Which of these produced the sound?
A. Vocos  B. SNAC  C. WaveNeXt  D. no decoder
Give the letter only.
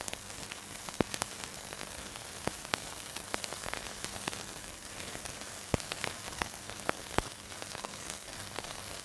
B